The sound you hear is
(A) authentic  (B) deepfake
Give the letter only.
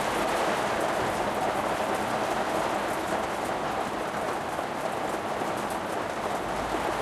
A